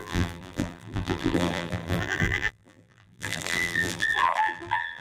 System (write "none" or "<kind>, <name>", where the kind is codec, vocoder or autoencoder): vocoder, BigVGAN v2